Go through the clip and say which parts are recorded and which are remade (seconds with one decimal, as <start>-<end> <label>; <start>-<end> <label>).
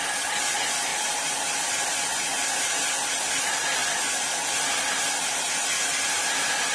0.0-6.7 recorded